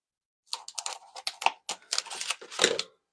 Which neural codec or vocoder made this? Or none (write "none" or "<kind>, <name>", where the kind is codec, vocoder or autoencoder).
none